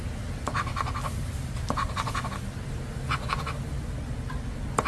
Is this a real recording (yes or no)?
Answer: yes